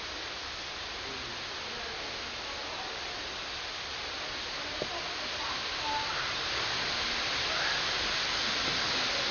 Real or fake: real